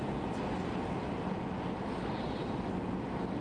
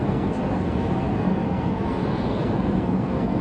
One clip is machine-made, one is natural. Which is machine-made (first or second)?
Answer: second